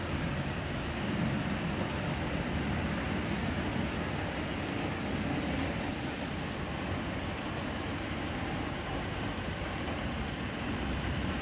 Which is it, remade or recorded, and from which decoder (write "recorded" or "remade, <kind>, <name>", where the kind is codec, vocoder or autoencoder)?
recorded